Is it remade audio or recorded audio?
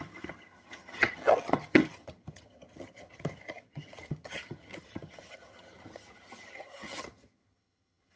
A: remade